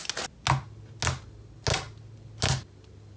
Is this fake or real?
real